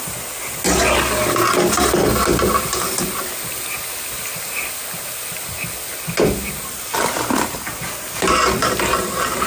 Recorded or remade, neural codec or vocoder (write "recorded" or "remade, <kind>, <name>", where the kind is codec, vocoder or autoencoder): recorded